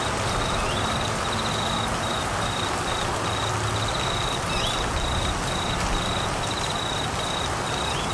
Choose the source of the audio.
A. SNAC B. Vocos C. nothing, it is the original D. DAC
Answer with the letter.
C